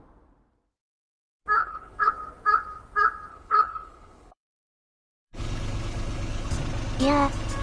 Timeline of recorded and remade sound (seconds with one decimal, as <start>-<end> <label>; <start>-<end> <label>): 0.0-1.6 recorded; 1.6-2.1 remade; 2.1-3.3 recorded; 3.3-6.5 remade; 6.5-7.6 recorded